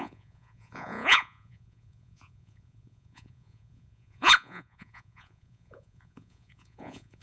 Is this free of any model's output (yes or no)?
no